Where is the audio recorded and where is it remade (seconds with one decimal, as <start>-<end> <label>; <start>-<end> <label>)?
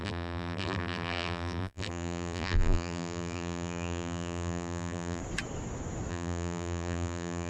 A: 0.0-5.2 remade; 5.2-6.1 recorded; 6.1-7.5 remade